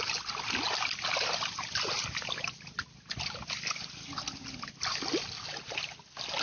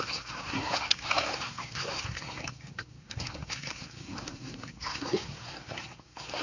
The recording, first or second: first